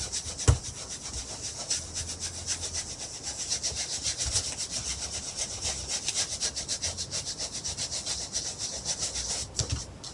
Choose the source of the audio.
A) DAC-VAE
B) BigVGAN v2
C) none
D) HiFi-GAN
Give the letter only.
C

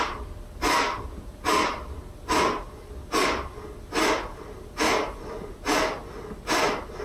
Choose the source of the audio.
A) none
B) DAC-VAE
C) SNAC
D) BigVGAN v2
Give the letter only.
A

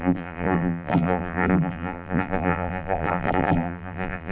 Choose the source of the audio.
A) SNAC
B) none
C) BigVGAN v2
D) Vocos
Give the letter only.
C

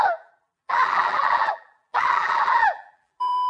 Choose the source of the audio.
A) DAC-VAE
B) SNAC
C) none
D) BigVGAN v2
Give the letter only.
D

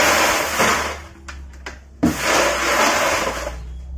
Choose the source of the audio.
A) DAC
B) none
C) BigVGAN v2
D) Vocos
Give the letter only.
B